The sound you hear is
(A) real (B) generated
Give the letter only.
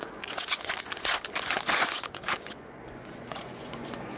B